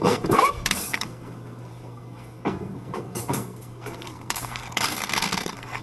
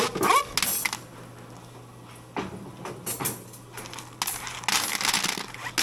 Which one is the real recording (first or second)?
second